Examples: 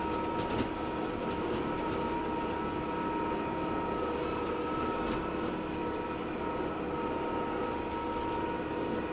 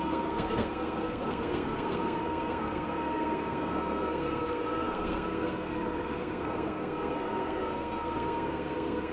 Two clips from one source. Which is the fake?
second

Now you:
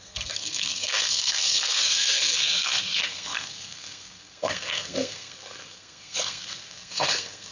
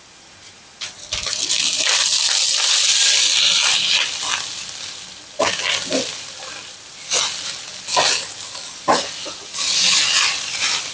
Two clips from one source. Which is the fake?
first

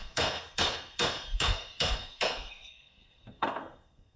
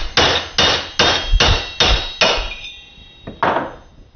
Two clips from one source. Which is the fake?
first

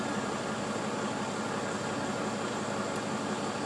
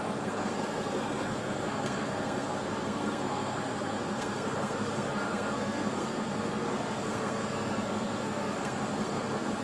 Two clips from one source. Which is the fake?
second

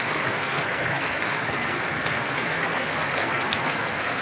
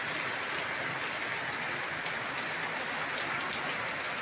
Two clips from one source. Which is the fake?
first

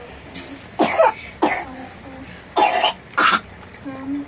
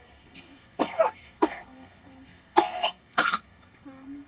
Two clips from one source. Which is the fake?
second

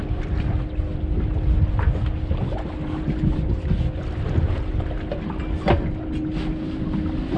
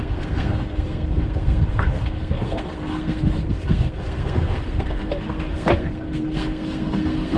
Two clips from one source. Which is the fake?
second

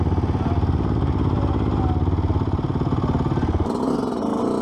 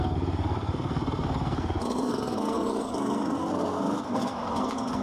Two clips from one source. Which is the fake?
second